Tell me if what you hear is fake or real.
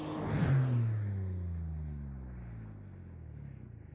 real